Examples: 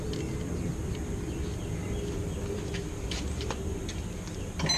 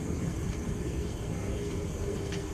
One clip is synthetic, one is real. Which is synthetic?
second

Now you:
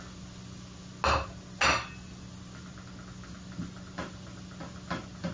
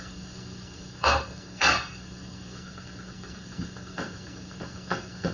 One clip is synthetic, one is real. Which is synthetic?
second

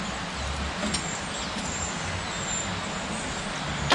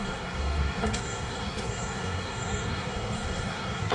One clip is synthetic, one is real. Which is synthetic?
second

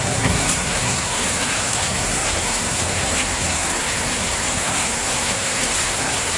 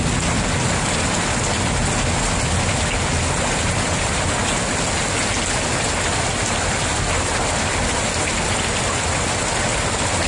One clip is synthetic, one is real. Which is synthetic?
first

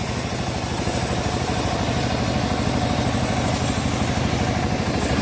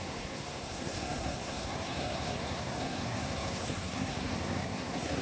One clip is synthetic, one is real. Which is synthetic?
second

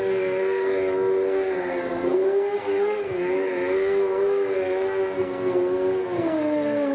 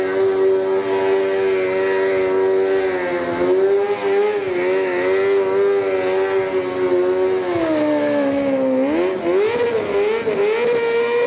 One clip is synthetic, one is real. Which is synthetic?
first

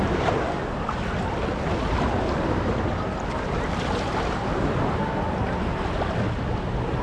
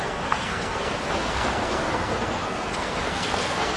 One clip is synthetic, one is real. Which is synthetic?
second